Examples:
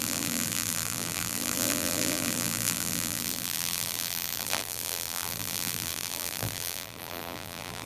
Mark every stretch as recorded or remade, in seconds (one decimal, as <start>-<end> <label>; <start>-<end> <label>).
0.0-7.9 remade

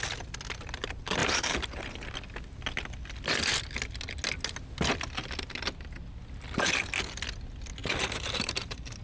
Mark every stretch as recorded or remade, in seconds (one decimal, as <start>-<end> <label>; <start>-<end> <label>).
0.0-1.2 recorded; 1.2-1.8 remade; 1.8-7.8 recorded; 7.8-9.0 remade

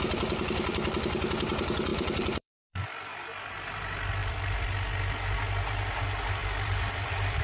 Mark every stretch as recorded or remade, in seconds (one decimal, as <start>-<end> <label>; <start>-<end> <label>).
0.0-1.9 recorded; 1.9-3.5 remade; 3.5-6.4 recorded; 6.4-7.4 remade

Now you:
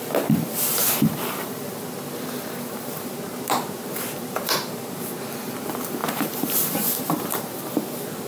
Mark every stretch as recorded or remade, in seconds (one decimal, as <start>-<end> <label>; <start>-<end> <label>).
0.0-0.8 recorded; 0.8-5.5 remade; 5.5-6.0 recorded; 6.0-7.6 remade; 7.6-8.3 recorded

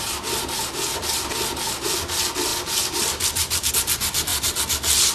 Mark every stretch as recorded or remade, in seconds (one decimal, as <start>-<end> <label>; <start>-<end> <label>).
0.0-2.5 recorded; 2.5-3.7 remade; 3.7-5.1 recorded

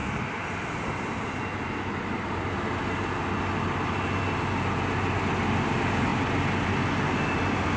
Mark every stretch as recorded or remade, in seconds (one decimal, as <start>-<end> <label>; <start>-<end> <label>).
0.0-7.8 recorded

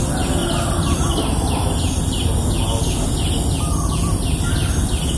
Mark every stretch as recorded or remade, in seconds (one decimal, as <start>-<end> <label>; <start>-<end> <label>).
0.0-0.4 recorded; 0.4-1.4 remade; 1.4-5.2 recorded